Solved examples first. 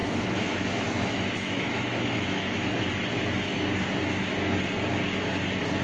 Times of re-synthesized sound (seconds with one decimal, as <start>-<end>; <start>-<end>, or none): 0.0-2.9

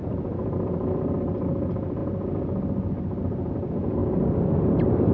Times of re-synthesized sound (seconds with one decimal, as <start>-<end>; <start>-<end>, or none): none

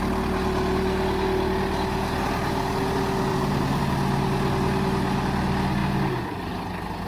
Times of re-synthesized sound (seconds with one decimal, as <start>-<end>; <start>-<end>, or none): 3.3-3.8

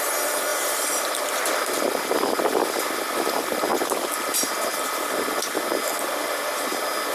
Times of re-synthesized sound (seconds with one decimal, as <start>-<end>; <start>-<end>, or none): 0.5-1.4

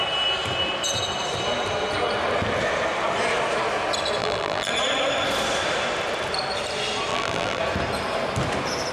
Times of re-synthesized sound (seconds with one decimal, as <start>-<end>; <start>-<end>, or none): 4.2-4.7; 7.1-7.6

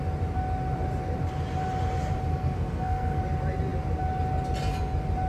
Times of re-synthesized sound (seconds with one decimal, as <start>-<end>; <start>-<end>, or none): 2.3-3.2

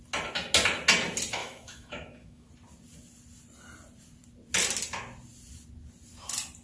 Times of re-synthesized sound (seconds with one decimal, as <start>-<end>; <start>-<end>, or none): 1.4-2.5

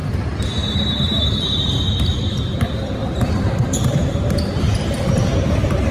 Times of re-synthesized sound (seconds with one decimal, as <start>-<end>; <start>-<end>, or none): 0.0-5.9